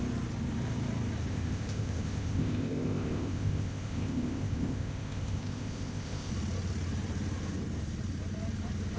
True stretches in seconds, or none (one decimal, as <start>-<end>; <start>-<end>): 0.0-1.3; 6.3-9.0